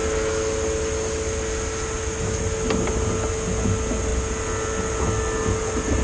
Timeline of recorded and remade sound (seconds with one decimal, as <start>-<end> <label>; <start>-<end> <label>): 0.0-6.0 recorded